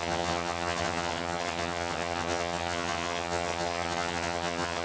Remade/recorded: remade